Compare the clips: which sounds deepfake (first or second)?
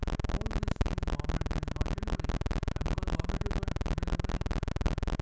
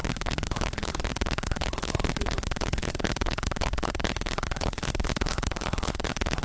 second